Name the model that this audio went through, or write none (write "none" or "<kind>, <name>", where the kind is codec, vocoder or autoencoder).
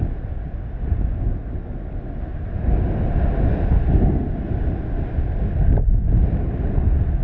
none